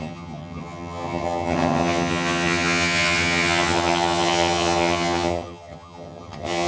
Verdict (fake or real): fake